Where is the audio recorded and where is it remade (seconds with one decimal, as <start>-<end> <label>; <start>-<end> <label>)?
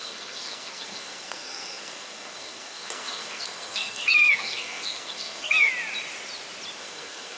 0.0-5.7 remade; 5.7-6.8 recorded; 6.8-7.4 remade